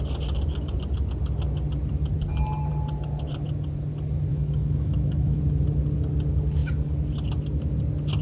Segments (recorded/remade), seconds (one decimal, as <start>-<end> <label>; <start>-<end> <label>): 0.0-4.3 recorded; 4.3-5.4 remade; 5.4-8.2 recorded